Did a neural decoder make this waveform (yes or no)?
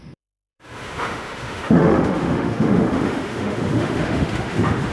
yes